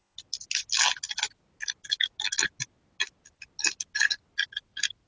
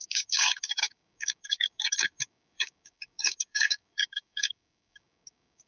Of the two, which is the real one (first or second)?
first